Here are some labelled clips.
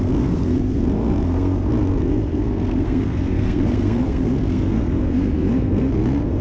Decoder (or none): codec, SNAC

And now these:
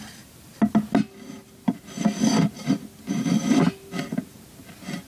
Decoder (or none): none